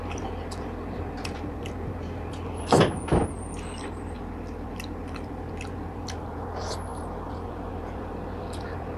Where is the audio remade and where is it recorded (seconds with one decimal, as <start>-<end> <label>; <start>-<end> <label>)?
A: 0.0-9.0 recorded